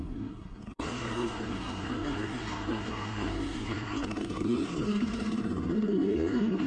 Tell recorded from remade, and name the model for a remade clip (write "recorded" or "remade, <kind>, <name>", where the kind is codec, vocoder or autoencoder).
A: remade, codec, SNAC